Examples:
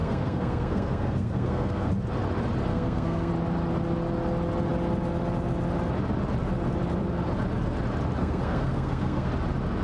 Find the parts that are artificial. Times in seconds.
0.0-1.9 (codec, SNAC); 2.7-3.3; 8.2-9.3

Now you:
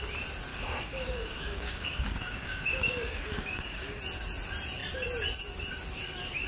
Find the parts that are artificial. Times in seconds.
0.5-4.0 (codec, DAC)

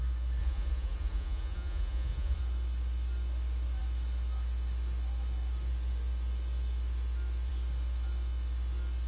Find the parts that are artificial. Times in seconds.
0.4-2.4 (vocoder, Vocos)

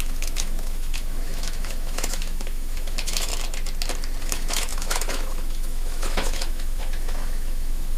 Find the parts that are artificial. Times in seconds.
0.0-3.3 (autoencoder, DAC-VAE); 4.2-8.0

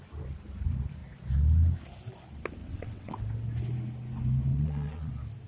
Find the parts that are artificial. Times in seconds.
2.6-3.2 (vocoder, WaveNeXt); 4.5-5.1